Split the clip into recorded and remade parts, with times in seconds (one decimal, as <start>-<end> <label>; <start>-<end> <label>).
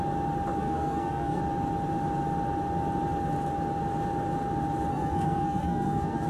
0.0-0.6 recorded; 0.6-1.4 remade; 1.4-4.9 recorded; 4.9-6.3 remade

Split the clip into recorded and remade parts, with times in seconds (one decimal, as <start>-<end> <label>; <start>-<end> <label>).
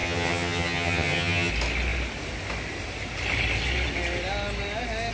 0.0-1.5 remade; 1.5-5.1 recorded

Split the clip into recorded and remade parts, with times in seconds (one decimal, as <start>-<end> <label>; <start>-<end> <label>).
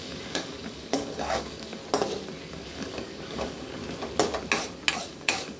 0.0-1.8 remade; 1.8-2.5 recorded; 2.5-3.8 remade; 3.8-5.1 recorded; 5.1-5.6 remade